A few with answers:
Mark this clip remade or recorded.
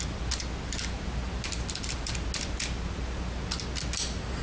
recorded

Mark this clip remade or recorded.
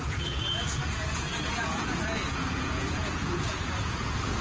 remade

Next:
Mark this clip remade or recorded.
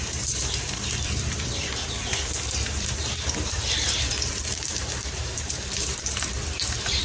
remade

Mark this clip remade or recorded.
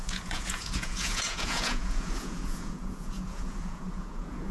remade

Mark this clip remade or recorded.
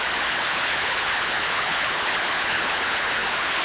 remade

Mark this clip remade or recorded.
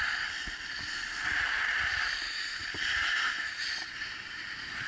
recorded